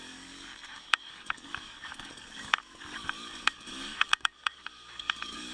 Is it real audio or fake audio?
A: fake